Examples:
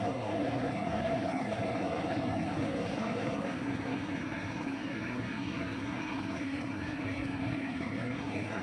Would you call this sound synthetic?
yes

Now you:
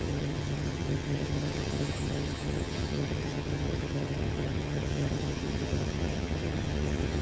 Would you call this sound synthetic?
yes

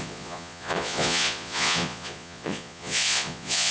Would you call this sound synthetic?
yes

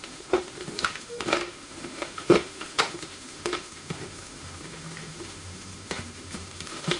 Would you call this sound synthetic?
yes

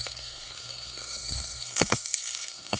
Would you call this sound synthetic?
yes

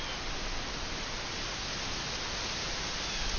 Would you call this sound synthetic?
no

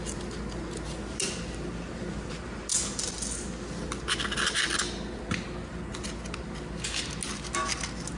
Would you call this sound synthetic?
no